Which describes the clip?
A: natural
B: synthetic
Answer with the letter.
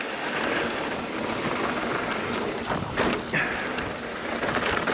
A